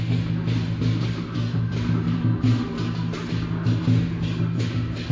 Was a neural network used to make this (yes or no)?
no